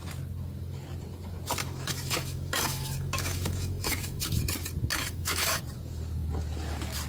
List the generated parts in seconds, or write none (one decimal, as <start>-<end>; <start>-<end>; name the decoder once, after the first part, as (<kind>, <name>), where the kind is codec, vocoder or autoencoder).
1.6-4.4 (autoencoder, DAC-VAE); 4.9-5.6